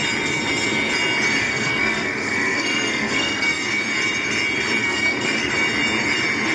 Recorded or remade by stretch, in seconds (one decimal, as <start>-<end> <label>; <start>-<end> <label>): 0.0-1.4 recorded; 1.4-3.7 remade; 3.7-4.8 recorded; 4.8-5.5 remade; 5.5-6.5 recorded